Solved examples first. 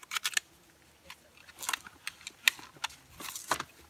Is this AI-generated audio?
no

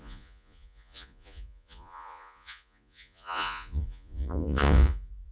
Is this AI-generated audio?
yes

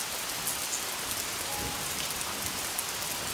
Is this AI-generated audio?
no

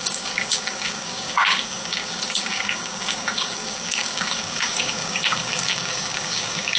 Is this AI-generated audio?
yes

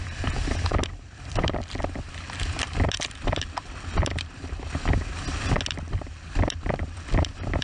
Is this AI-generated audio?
yes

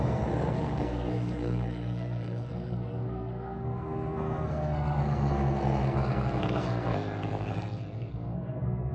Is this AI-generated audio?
yes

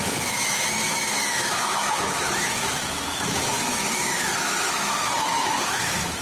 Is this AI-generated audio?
yes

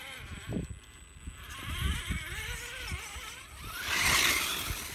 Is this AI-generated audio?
no